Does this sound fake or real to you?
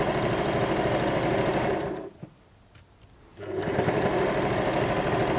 real